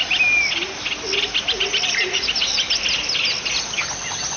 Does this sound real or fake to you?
real